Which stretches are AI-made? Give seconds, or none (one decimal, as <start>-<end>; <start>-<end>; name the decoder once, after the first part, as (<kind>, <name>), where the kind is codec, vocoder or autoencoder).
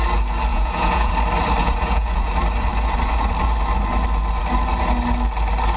0.5-1.1 (vocoder, Vocos); 1.6-2.3